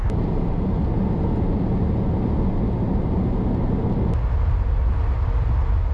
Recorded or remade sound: recorded